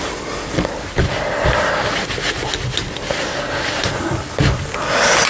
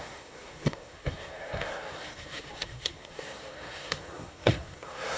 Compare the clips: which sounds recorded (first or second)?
first